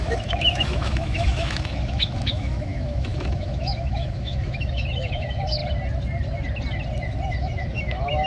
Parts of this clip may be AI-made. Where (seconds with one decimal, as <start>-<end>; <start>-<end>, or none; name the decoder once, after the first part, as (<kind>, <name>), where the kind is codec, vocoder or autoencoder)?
0.0-5.6 (autoencoder, DAC-VAE); 7.4-8.3